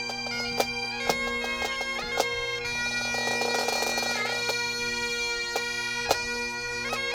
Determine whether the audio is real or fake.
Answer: real